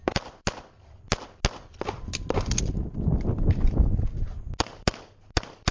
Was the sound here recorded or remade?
recorded